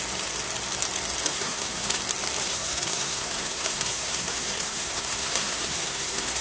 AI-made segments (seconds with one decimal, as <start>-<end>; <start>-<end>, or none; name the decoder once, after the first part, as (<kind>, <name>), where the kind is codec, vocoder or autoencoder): 1.3-2.0 (codec, SNAC); 2.4-6.4